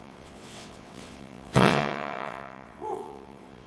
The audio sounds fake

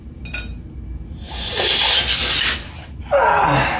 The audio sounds real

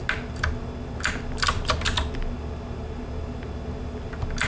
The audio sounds real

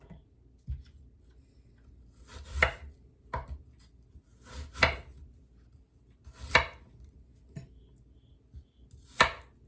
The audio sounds real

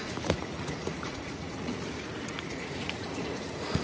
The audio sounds fake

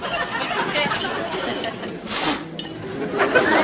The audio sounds real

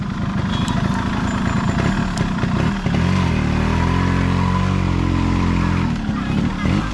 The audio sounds real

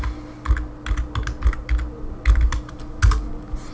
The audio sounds real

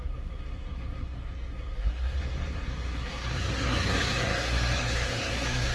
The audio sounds fake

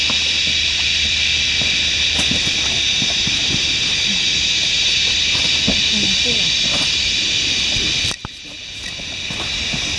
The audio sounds real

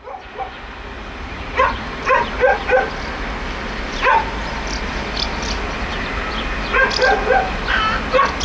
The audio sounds real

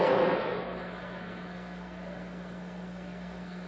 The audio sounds fake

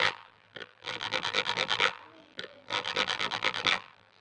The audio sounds fake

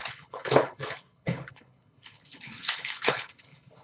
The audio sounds fake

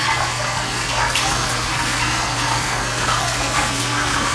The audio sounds fake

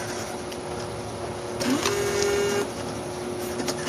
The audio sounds real